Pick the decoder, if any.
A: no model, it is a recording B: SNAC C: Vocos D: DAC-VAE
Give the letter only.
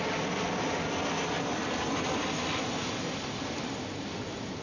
A